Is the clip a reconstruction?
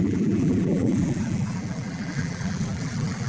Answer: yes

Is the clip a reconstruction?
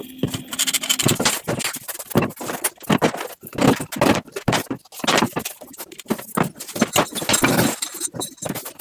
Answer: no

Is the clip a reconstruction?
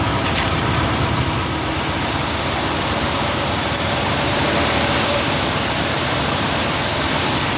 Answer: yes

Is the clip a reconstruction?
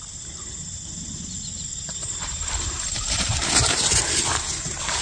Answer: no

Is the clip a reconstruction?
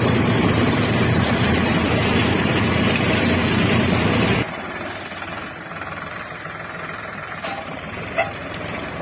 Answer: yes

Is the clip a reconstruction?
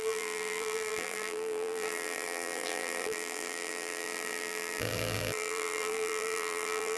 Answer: yes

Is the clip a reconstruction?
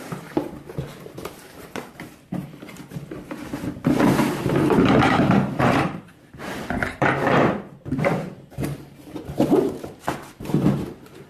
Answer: yes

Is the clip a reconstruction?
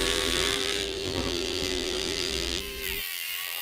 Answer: yes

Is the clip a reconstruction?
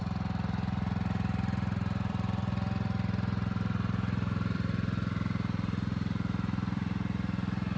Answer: yes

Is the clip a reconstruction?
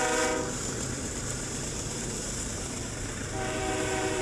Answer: yes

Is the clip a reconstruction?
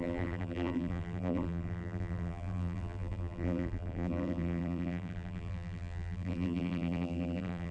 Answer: yes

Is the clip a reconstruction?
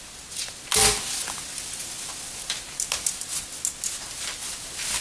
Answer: no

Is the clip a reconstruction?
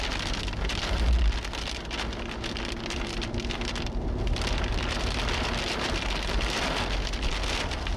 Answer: yes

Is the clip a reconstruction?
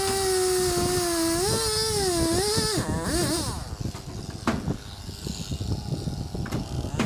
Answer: no